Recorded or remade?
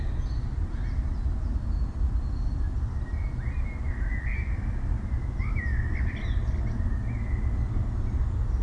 recorded